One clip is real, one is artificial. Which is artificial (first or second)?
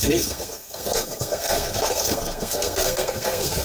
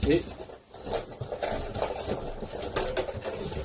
first